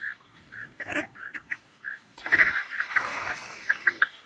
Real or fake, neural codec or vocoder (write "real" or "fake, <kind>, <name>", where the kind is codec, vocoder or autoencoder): fake, codec, DAC